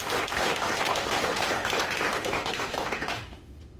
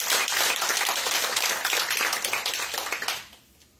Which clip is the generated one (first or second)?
first